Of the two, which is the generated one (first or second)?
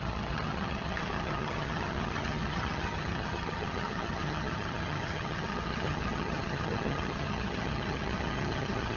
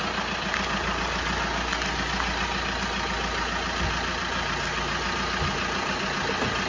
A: first